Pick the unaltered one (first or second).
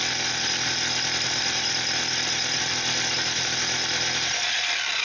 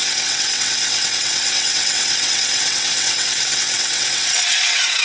first